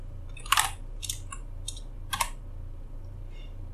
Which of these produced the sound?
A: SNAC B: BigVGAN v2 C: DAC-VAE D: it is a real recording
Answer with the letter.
B